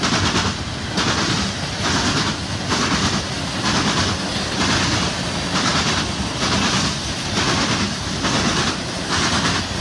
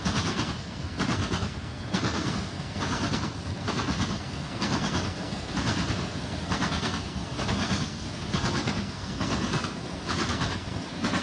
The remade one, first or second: second